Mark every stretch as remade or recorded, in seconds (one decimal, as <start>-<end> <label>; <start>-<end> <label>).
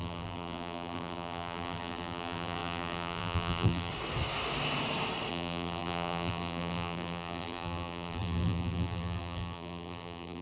0.0-3.9 remade; 3.9-5.3 recorded; 5.3-10.4 remade